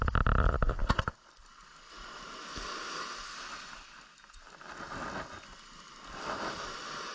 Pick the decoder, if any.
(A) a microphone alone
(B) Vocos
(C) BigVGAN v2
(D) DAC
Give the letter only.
A